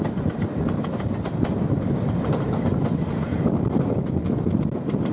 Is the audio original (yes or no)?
yes